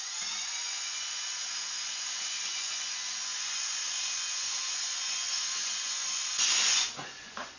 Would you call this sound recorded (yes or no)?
no